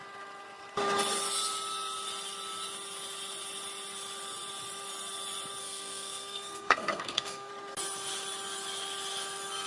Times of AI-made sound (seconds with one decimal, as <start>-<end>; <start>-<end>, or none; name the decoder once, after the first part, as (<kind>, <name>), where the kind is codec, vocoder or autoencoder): 5.6-7.5 (codec, SNAC)